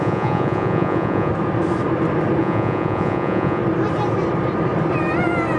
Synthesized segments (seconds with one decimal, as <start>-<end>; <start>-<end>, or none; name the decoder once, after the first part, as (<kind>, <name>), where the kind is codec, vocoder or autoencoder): 0.0-1.3 (vocoder, Vocos); 2.4-3.6